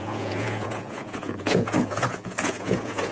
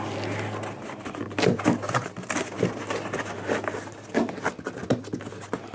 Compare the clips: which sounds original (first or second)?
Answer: second